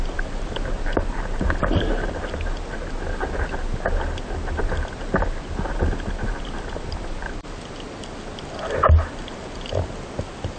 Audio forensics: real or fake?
real